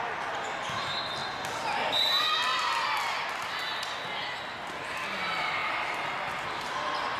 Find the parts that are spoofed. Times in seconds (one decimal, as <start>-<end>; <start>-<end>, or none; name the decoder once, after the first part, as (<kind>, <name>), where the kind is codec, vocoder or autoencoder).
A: none